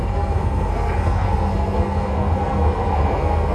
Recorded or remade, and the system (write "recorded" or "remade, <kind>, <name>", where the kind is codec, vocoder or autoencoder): remade, codec, SNAC